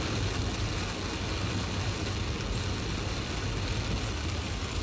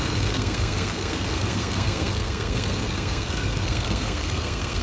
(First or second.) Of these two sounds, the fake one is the second